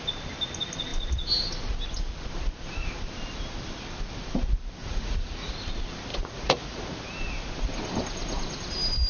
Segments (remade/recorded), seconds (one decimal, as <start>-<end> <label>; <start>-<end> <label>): 0.0-4.8 recorded; 4.8-5.5 remade; 5.5-6.1 recorded; 6.1-6.8 remade; 6.8-9.1 recorded